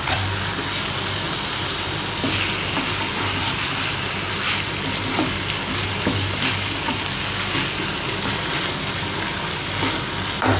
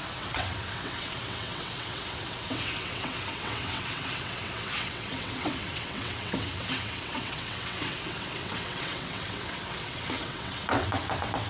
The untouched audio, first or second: first